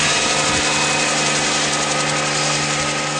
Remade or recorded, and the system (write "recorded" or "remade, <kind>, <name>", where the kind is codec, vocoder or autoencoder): recorded